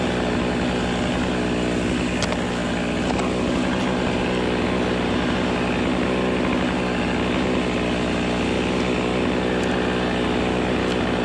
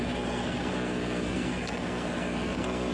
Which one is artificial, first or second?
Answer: second